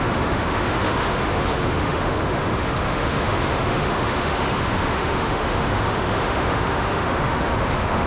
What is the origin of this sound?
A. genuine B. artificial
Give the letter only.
B